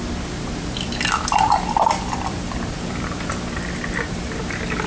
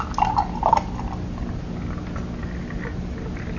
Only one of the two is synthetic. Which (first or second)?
first